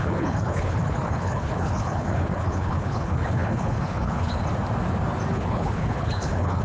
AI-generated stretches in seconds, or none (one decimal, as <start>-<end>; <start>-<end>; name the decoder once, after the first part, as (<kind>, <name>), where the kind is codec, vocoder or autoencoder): 0.0-4.4 (codec, HILCodec); 5.3-6.6